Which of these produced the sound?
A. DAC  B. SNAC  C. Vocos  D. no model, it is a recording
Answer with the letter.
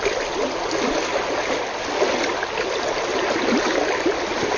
D